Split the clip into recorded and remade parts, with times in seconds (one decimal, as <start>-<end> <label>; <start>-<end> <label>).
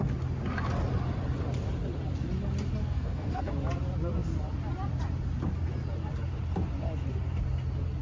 0.0-2.8 recorded; 2.8-3.5 remade; 3.5-8.0 recorded